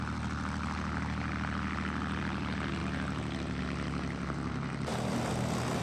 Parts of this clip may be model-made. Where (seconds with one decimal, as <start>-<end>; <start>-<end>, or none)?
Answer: none